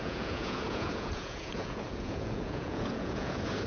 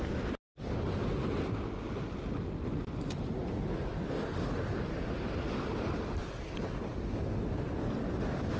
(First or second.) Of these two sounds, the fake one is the first